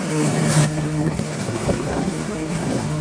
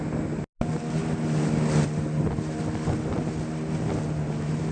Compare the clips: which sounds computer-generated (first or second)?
first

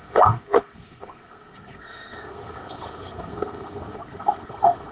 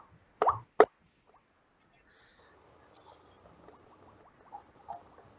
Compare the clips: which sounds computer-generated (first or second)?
first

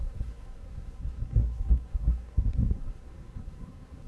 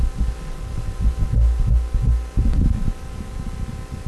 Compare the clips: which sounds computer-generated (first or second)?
first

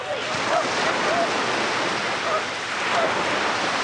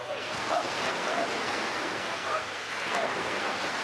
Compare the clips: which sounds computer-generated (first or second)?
second